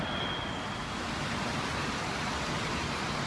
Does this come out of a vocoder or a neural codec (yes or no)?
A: no